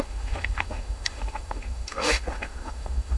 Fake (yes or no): yes